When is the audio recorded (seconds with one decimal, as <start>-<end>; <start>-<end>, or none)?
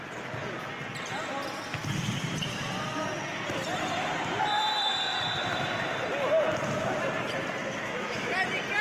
0.0-7.6; 8.3-8.8